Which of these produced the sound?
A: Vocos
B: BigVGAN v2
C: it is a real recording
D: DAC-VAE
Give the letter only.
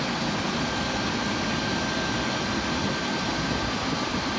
C